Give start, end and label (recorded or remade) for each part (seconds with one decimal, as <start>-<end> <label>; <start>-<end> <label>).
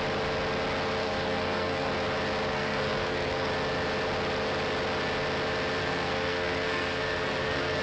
0.0-1.0 recorded; 1.0-1.9 remade; 1.9-2.5 recorded; 2.5-3.5 remade; 3.5-5.8 recorded; 5.8-7.8 remade